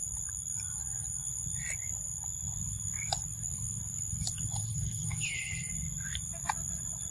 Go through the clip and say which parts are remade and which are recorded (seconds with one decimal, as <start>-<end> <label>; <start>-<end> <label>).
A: 0.0-4.6 recorded; 4.6-5.7 remade; 5.7-7.1 recorded